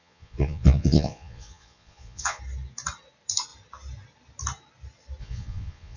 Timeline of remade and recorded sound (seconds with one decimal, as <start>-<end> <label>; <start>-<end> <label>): 0.0-2.4 remade; 2.4-5.2 recorded; 5.2-6.0 remade